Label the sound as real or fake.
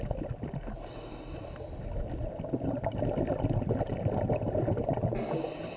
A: real